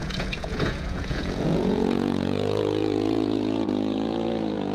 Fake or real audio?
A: fake